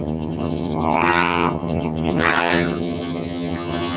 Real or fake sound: fake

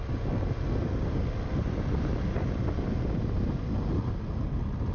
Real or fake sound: real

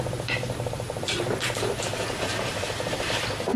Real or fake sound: fake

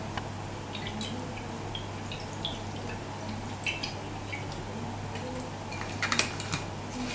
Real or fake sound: real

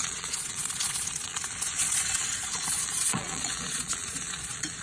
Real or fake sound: fake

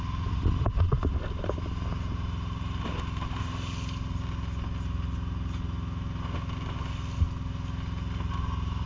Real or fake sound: real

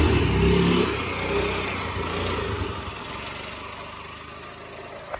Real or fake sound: real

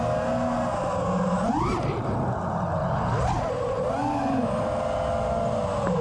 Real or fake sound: real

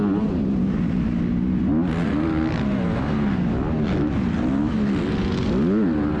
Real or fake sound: real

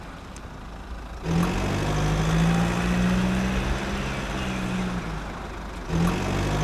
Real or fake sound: real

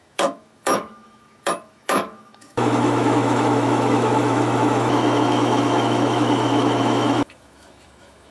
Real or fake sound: fake